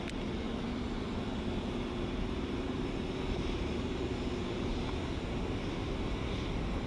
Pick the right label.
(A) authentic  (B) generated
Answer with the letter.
A